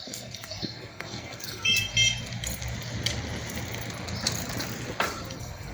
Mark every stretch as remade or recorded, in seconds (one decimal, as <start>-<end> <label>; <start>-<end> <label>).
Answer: 0.0-1.9 remade; 1.9-5.3 recorded; 5.3-5.7 remade